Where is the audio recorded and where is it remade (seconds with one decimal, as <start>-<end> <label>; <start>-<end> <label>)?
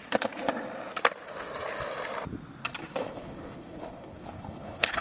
0.0-3.0 recorded; 3.0-5.0 remade